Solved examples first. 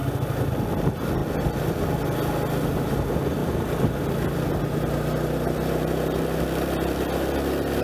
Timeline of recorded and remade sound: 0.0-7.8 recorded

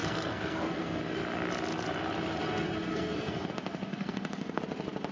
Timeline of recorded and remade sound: 0.0-1.0 remade; 1.0-2.9 recorded; 2.9-3.5 remade; 3.5-3.9 recorded; 3.9-4.6 remade; 4.6-5.1 recorded

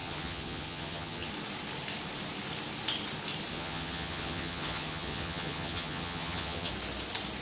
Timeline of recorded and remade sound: 0.0-1.3 remade; 1.3-3.5 recorded; 3.5-6.7 remade; 6.7-7.4 recorded

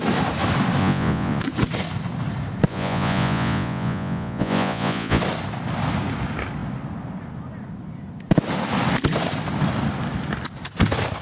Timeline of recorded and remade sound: 0.0-0.8 recorded; 0.8-1.4 remade; 1.4-2.7 recorded; 2.7-5.2 remade; 5.2-11.2 recorded

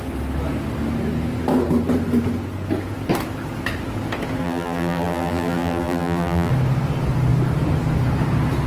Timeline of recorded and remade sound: 0.0-4.4 recorded; 4.4-6.5 remade; 6.5-8.7 recorded

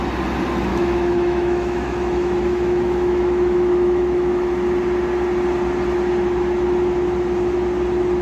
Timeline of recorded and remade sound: 0.0-0.7 recorded; 0.7-4.5 remade; 4.5-8.2 recorded

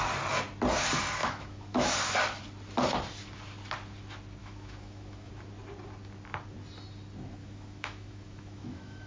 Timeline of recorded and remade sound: 0.0-1.2 recorded; 1.2-1.9 remade; 1.9-4.4 recorded; 4.4-5.3 remade; 5.3-7.4 recorded; 7.4-9.1 remade